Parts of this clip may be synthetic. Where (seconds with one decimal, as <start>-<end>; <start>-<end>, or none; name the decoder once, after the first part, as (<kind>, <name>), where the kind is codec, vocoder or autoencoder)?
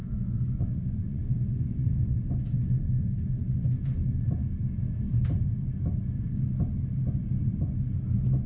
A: 0.0-2.7 (vocoder, Vocos); 3.4-4.0